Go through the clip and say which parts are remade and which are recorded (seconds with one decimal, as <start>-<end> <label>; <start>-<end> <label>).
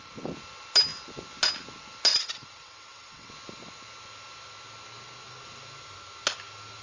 0.0-2.1 recorded; 2.1-3.3 remade; 3.3-6.8 recorded